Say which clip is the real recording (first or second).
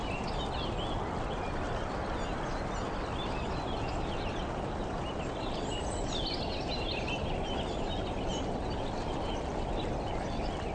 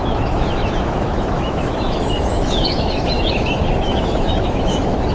first